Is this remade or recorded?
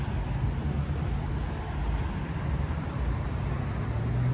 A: recorded